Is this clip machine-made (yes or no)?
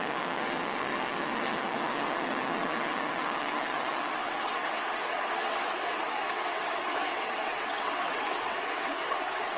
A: yes